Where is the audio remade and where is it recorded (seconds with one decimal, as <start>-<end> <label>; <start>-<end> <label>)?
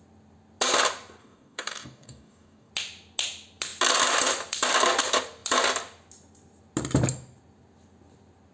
0.0-1.2 recorded; 1.2-2.7 remade; 2.7-8.5 recorded